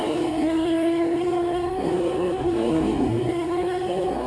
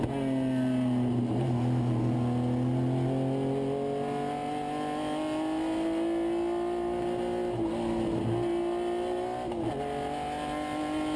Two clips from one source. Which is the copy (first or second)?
first